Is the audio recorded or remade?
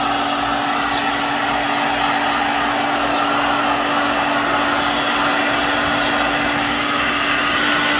recorded